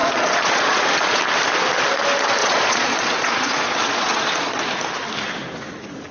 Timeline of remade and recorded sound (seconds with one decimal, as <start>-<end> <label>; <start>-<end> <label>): 0.0-1.2 remade; 1.2-2.4 recorded; 2.4-4.7 remade; 4.7-6.1 recorded